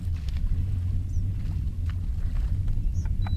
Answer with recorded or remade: recorded